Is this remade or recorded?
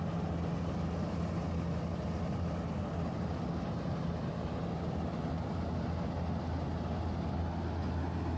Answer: recorded